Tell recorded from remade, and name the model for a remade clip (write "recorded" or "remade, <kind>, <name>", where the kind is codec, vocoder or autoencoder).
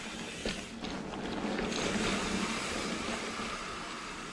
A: recorded